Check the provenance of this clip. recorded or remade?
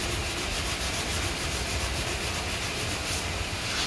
recorded